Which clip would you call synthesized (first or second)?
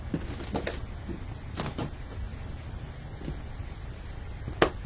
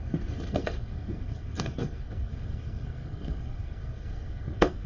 second